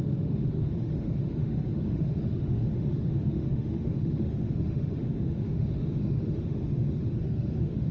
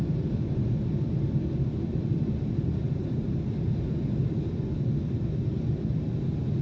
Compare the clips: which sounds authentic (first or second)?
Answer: second